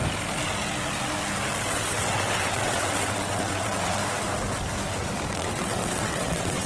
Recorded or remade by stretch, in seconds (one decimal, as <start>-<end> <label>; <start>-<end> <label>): 0.0-1.7 recorded; 1.7-4.0 remade; 4.0-5.3 recorded; 5.3-6.7 remade